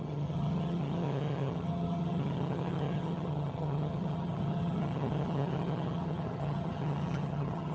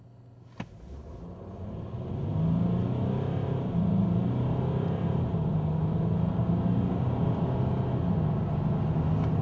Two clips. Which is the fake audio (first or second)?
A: first